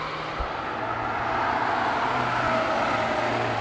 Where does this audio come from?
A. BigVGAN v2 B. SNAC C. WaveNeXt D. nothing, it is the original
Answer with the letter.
D